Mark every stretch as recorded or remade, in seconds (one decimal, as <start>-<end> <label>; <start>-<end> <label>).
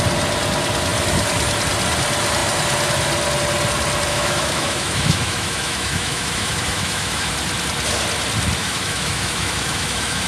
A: 0.0-4.1 recorded; 4.1-7.3 remade; 7.3-8.6 recorded; 8.6-10.3 remade